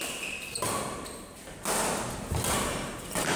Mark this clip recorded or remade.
recorded